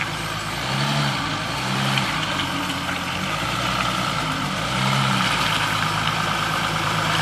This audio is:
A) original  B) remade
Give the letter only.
B